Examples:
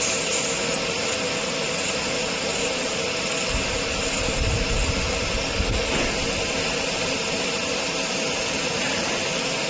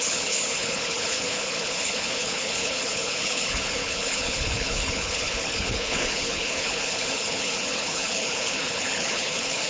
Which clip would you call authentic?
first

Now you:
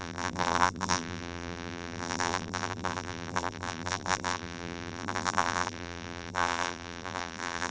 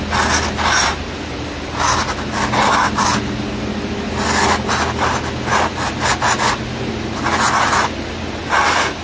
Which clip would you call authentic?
second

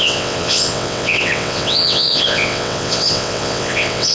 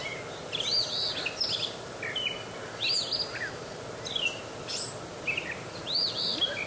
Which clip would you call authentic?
second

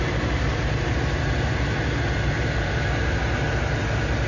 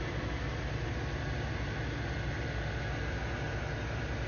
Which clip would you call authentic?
second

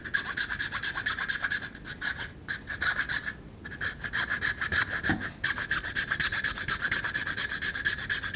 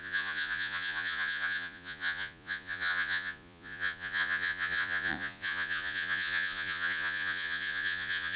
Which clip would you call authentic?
first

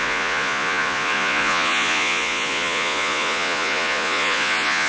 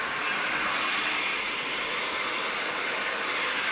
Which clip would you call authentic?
second